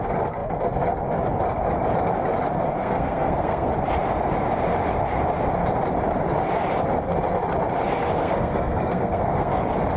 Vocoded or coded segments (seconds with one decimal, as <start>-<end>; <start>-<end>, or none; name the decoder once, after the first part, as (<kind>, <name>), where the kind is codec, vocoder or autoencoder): 2.8-3.7 (codec, SNAC); 8.2-9.6